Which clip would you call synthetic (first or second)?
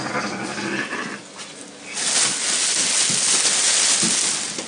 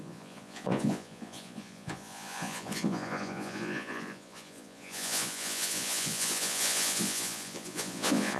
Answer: second